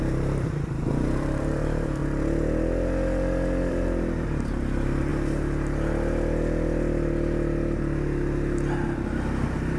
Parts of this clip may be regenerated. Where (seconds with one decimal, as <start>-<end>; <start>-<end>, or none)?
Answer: 0.0-2.0; 3.7-5.1